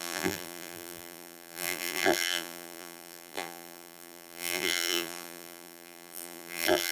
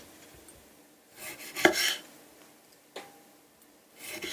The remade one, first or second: first